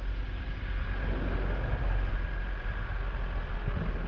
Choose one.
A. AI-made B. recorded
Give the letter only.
B